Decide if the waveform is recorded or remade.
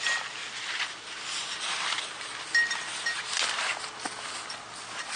recorded